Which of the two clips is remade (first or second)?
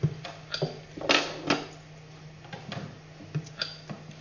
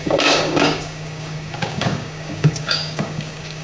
second